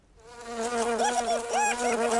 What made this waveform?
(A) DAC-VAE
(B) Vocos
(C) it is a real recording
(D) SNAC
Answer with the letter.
C